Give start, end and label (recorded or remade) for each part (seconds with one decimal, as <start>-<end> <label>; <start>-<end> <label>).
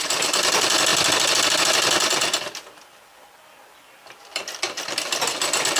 0.0-5.8 recorded